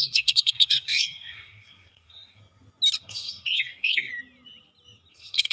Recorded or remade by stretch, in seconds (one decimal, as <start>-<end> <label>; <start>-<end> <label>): 0.0-2.4 remade; 2.4-3.0 recorded; 3.0-4.1 remade; 4.1-5.1 recorded; 5.1-5.5 remade